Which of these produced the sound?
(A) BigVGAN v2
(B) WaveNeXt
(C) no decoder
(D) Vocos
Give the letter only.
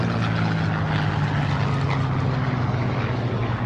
C